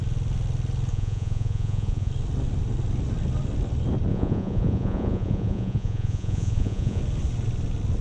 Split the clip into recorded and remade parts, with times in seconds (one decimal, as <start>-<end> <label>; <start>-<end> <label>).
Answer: 0.0-0.9 recorded; 0.9-2.1 remade; 2.1-4.1 recorded; 4.1-7.0 remade; 7.0-8.0 recorded